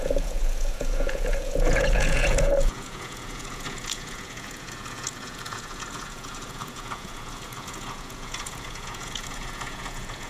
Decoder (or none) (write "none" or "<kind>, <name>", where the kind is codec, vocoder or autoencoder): vocoder, Vocos